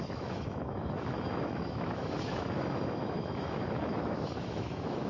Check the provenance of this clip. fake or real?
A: fake